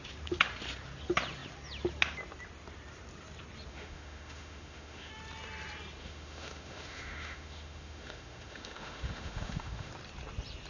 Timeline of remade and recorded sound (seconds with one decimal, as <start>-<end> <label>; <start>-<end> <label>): 0.0-3.7 recorded; 3.7-5.1 remade; 5.1-6.0 recorded; 6.0-9.9 remade; 9.9-10.7 recorded